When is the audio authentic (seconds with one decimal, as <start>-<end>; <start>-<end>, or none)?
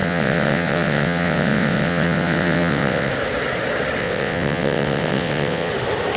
3.1-4.0; 5.7-6.2